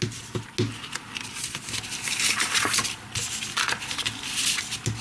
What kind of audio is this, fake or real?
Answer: real